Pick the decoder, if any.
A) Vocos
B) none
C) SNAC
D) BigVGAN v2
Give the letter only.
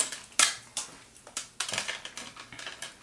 B